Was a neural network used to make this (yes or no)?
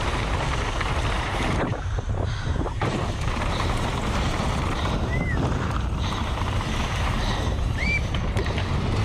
yes